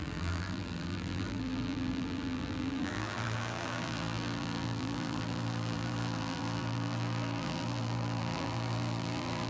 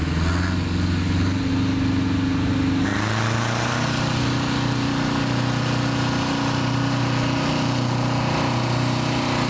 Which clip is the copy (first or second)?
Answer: first